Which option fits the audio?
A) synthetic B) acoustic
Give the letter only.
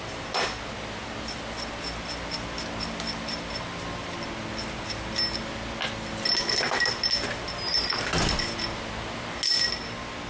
B